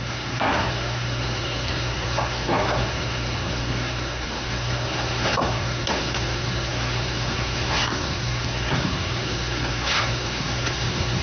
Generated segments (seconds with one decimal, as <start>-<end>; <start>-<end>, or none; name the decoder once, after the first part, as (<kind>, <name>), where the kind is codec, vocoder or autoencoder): 0.0-11.2 (codec, SNAC)